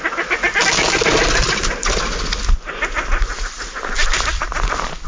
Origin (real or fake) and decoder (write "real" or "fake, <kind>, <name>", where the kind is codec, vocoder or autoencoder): real